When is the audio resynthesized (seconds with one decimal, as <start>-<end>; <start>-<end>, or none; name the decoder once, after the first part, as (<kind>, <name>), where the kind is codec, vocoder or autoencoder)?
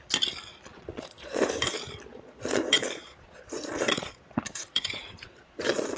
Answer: 0.7-1.4 (vocoder, Vocos); 2.1-6.0